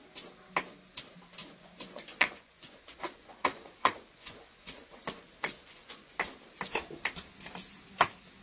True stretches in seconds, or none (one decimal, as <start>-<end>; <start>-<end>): 0.0-1.4; 6.2-8.4